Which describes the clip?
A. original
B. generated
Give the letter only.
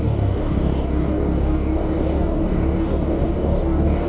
B